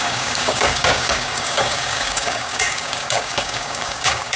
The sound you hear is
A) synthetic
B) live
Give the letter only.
A